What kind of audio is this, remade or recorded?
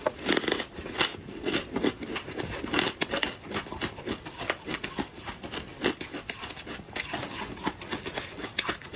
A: recorded